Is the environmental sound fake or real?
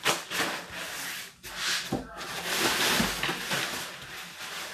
real